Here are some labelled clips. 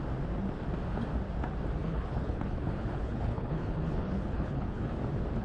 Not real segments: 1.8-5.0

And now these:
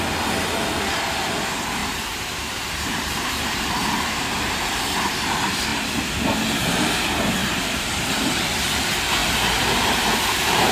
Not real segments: 1.8-4.6; 7.4-8.5; 9.2-10.7

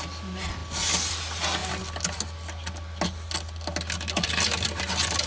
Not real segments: none

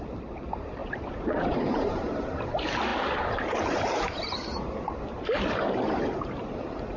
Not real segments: 0.0-7.0